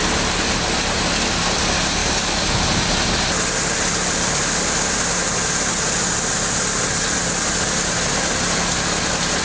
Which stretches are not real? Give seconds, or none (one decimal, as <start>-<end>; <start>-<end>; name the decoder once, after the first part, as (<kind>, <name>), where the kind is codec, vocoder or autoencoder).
2.0-2.6 (codec, DAC)